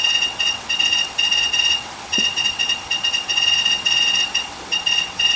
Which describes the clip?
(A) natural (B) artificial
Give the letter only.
B